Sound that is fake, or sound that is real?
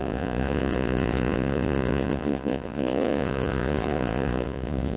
fake